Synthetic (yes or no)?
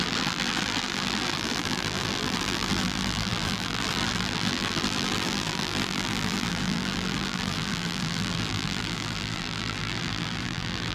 yes